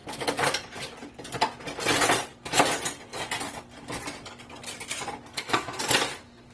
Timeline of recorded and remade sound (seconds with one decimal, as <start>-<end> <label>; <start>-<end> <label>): 0.0-5.3 recorded; 5.3-5.8 remade; 5.8-6.5 recorded